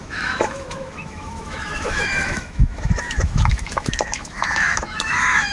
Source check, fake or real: fake